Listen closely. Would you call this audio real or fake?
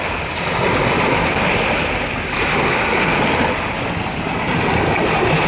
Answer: real